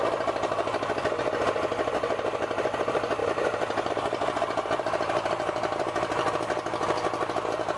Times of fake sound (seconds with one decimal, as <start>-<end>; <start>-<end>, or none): 3.2-3.9